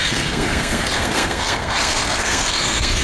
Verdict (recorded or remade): remade